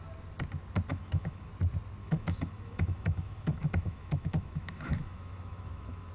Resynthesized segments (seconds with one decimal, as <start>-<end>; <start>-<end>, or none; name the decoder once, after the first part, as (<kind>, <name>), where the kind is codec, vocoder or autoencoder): 0.9-1.5 (autoencoder, DAC-VAE); 2.0-6.1